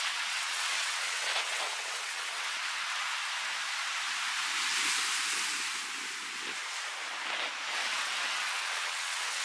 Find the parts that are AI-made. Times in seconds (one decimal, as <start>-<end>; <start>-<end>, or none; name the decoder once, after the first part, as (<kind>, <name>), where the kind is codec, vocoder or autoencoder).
0.0-3.0 (vocoder, WaveNeXt); 7.7-9.4